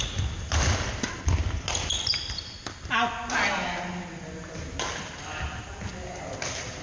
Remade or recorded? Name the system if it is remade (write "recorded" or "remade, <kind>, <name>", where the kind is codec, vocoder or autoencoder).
recorded